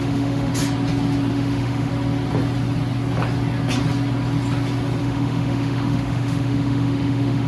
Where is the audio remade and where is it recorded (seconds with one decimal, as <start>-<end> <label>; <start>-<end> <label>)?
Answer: 0.0-0.5 remade; 0.5-1.3 recorded; 1.3-1.9 remade; 1.9-5.0 recorded; 5.0-7.5 remade